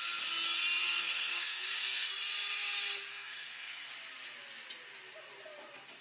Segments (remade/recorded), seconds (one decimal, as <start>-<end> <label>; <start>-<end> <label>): 0.0-0.8 recorded; 0.8-2.1 remade; 2.1-3.1 recorded; 3.1-3.9 remade; 3.9-6.0 recorded